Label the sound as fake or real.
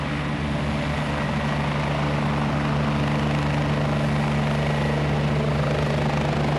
real